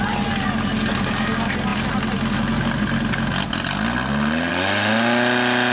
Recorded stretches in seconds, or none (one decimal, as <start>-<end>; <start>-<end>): 0.0-5.7